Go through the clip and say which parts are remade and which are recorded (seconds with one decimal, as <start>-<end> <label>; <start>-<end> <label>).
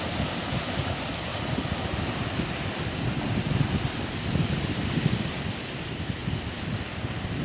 0.0-1.3 remade; 1.3-5.7 recorded; 5.7-6.2 remade; 6.2-6.8 recorded; 6.8-7.4 remade